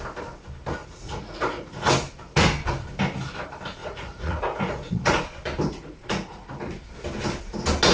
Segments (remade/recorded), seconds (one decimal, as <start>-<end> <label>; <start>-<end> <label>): 0.0-0.8 recorded; 0.8-1.9 remade; 1.9-3.8 recorded; 3.8-5.2 remade; 5.2-5.7 recorded; 5.7-6.5 remade; 6.5-7.9 recorded